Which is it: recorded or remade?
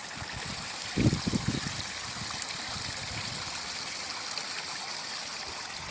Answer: recorded